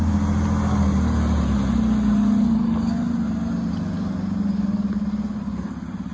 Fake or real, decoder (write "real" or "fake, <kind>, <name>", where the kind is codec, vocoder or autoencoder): real